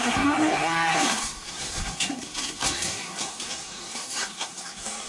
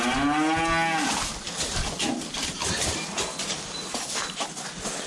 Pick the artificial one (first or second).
first